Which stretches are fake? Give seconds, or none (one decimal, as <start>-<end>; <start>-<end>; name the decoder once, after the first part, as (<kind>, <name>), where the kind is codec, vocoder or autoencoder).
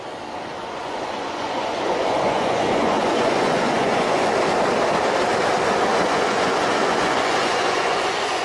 0.6-4.3 (vocoder, Vocos); 5.9-8.4